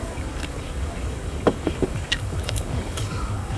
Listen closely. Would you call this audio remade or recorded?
remade